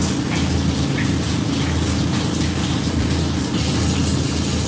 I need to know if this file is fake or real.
real